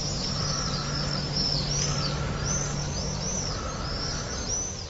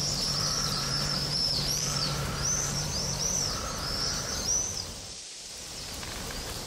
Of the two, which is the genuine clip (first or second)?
first